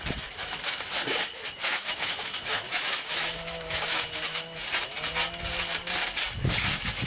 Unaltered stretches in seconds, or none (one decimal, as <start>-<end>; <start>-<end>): 0.0-0.4; 4.7-7.1